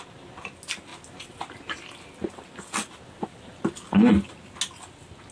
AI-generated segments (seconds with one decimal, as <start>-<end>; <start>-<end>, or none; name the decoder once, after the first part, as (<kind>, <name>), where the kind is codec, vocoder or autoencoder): none